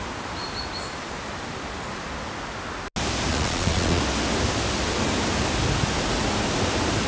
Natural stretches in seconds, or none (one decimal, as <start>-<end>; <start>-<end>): 0.0-3.3; 4.0-7.1

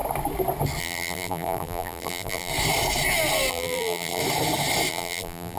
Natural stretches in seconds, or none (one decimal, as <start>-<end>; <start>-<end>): 0.0-0.8; 2.5-3.5; 4.2-4.9

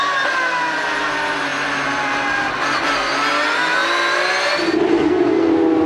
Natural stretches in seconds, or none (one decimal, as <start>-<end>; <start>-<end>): 0.0-4.9; 5.5-5.9